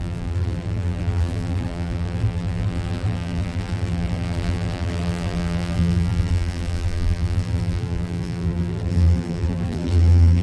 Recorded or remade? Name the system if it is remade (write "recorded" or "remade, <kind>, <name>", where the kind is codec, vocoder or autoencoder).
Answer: remade, vocoder, BigVGAN v2